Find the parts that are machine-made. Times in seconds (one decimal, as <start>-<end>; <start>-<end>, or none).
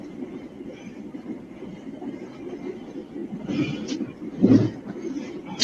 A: 1.7-2.3